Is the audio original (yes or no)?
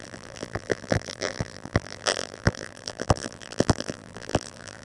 no